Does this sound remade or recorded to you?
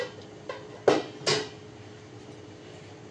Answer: recorded